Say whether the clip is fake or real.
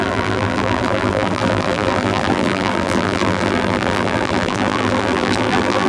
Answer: fake